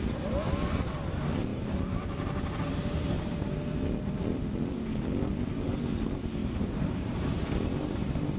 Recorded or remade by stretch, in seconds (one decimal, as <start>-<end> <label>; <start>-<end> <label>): 0.0-1.5 recorded; 1.5-3.5 remade; 3.5-6.4 recorded; 6.4-7.1 remade; 7.1-8.4 recorded